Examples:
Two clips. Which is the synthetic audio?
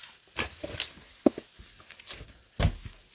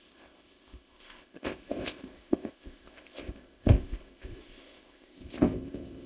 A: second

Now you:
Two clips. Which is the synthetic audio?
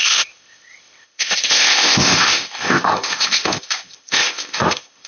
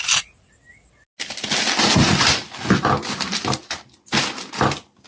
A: first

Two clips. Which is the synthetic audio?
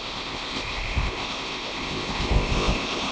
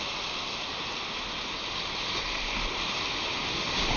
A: first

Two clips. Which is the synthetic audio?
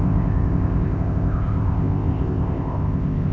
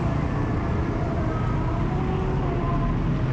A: first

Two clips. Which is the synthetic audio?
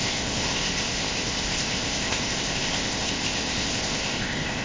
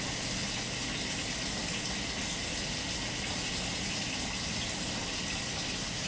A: first